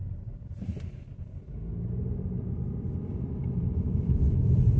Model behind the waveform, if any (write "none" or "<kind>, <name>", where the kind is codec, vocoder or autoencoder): none